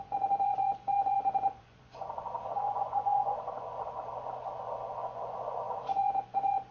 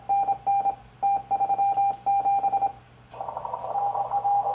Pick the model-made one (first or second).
first